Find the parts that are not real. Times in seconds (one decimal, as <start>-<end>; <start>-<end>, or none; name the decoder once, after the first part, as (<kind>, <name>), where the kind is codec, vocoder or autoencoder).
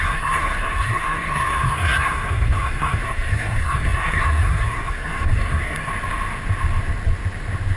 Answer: 0.0-5.9 (codec, SNAC)